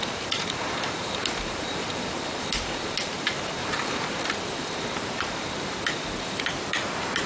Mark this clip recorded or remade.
remade